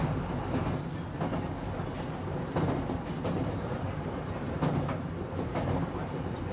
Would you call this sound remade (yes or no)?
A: no